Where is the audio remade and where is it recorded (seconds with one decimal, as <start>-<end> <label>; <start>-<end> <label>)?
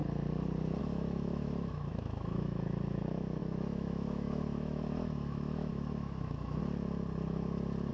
0.0-0.8 recorded; 0.8-6.6 remade; 6.6-7.9 recorded